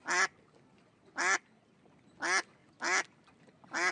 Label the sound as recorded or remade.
recorded